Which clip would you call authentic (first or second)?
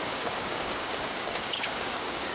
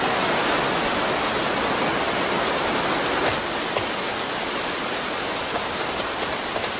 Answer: second